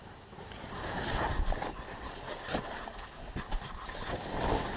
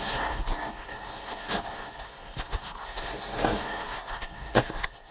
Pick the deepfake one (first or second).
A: second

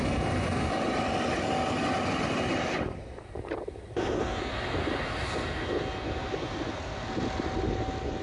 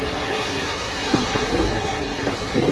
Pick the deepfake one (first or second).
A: second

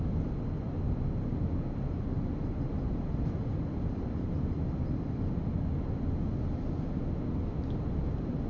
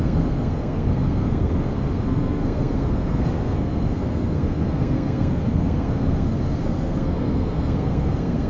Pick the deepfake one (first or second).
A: second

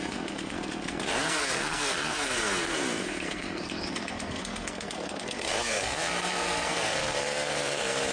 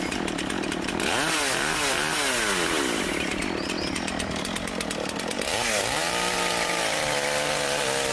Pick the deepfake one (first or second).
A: first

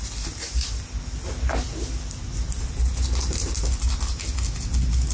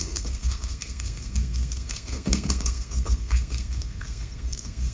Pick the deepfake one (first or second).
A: second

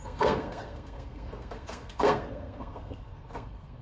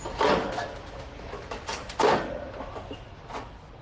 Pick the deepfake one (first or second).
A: first